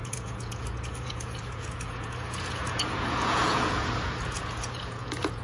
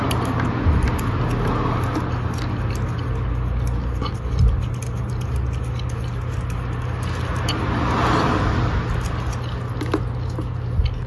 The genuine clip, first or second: second